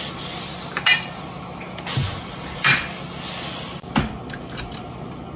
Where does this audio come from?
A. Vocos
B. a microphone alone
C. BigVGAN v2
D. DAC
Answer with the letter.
B